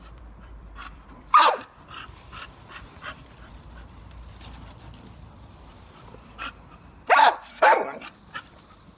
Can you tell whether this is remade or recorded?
remade